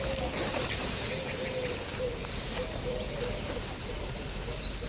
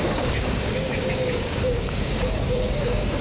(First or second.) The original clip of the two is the first